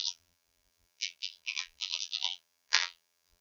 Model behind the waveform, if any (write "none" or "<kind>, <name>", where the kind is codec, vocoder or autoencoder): vocoder, BigVGAN v2